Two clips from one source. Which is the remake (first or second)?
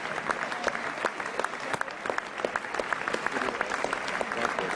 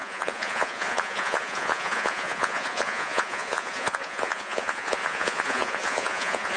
second